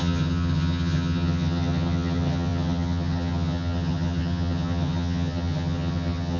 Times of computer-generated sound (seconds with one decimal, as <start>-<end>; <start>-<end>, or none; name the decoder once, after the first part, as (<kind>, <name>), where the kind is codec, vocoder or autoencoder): 0.0-6.4 (vocoder, HiFi-GAN)